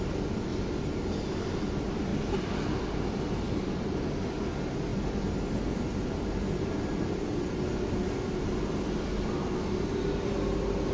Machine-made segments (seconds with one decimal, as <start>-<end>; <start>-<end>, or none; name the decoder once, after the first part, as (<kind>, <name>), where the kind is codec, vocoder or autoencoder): none